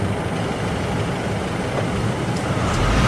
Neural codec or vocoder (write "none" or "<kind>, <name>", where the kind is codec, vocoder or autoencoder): none